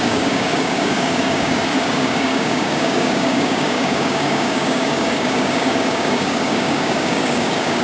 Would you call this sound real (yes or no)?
no